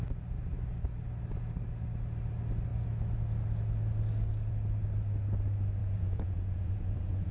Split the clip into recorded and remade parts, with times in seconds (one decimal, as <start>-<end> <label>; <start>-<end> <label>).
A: 0.0-5.8 recorded; 5.8-7.3 remade